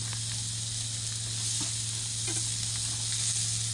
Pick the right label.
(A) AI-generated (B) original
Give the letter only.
B